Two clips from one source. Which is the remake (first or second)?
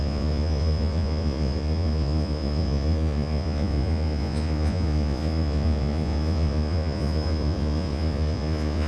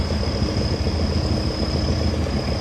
first